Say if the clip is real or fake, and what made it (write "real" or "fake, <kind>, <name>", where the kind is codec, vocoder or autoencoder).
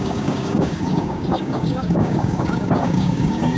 fake, codec, DAC